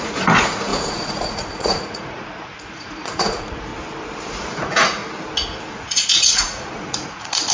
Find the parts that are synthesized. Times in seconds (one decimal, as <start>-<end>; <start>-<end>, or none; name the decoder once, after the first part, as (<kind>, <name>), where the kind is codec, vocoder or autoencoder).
0.0-3.7 (vocoder, Vocos); 4.3-5.0; 5.7-7.5